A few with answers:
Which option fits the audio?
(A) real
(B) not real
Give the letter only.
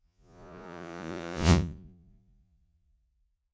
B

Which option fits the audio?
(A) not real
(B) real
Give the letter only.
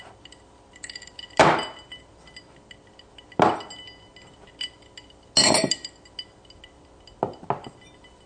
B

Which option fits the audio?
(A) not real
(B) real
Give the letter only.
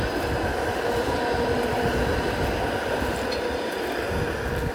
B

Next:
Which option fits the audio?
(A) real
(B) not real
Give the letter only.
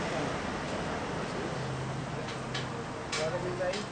A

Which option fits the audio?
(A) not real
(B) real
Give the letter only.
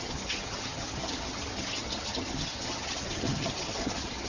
A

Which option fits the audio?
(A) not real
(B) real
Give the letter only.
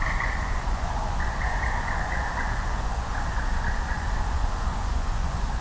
A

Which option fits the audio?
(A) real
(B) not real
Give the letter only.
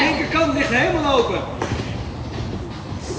A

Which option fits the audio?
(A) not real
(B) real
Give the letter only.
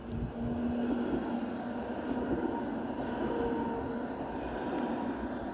B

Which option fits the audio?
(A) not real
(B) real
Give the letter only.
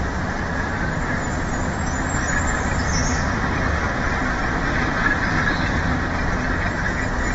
B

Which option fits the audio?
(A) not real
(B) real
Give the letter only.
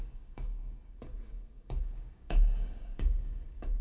A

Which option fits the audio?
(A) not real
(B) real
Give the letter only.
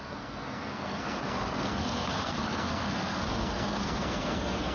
A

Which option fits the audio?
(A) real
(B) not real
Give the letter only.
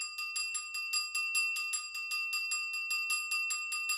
A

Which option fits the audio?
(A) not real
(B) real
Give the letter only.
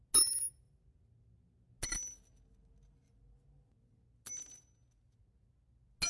B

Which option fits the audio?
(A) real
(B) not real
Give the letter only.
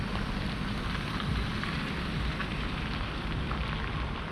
A